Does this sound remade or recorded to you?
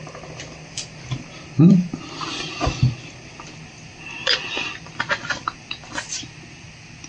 recorded